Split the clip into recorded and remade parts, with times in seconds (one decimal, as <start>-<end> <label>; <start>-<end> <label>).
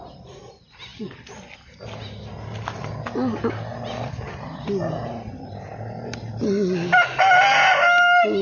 0.0-8.4 recorded